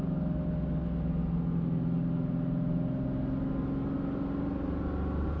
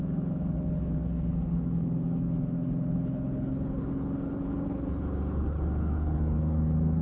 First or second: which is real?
first